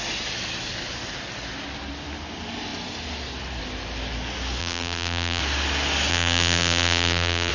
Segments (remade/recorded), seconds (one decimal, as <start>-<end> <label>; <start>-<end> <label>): 0.0-4.6 recorded; 4.6-5.4 remade; 5.4-6.1 recorded; 6.1-7.5 remade